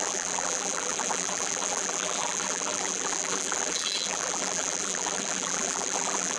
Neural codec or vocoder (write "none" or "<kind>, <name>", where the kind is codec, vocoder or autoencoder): vocoder, BigVGAN v2